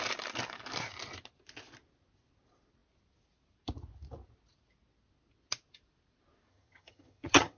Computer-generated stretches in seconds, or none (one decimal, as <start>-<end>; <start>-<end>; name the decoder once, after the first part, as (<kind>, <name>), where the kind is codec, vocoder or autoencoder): 6.5-7.6 (vocoder, HiFi-GAN)